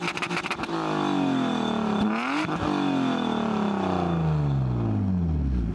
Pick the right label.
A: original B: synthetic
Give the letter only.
A